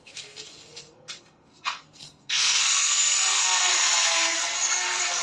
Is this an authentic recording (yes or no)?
no